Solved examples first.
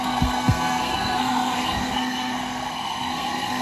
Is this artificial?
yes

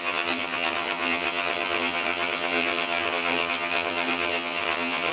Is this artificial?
yes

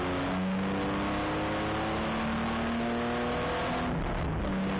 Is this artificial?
no